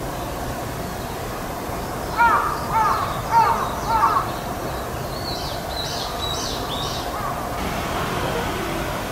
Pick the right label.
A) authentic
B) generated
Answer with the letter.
A